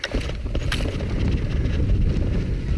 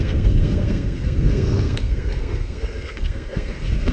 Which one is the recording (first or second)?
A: first